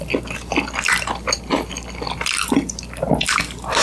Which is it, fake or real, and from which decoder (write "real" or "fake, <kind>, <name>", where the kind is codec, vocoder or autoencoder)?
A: fake, vocoder, BigVGAN v2